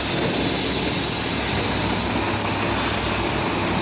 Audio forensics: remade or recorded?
recorded